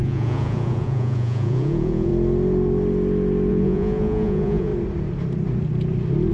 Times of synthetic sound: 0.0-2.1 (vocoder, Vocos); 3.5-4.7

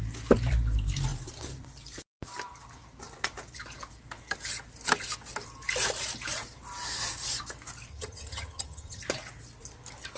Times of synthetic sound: 7.9-9.0 (vocoder, HiFi-GAN)

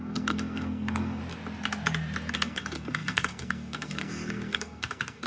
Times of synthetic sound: 0.0-1.2 (codec, SNAC); 2.3-5.3

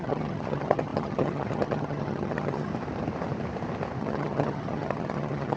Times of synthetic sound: 0.0-2.7 (vocoder, HiFi-GAN); 4.0-5.6

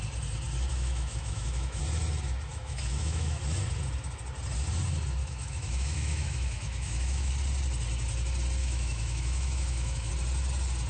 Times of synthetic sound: 0.7-1.8 (autoencoder, DAC-VAE); 2.5-3.4; 5.2-7.3; 8.6-10.1

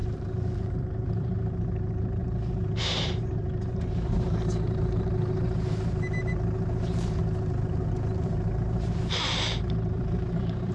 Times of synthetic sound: 0.0-7.2 (vocoder, BigVGAN v2); 7.9-10.7

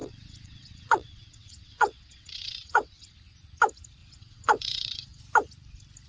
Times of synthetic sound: 0.0-3.1 (vocoder, WaveNeXt); 4.0-5.2